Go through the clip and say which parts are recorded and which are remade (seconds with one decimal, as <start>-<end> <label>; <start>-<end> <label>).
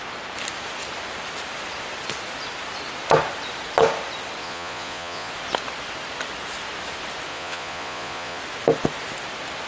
0.0-4.4 recorded; 4.4-5.3 remade; 5.3-7.3 recorded; 7.3-8.4 remade; 8.4-9.7 recorded